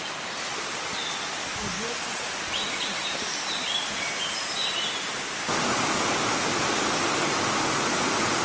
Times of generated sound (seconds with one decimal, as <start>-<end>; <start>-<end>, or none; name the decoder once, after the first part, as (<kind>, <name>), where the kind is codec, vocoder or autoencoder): none